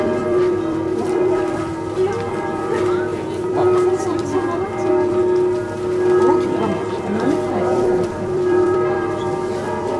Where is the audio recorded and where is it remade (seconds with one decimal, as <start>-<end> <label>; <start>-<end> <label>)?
0.0-1.7 remade; 1.7-2.3 recorded; 2.3-5.2 remade; 5.2-6.2 recorded; 6.2-10.0 remade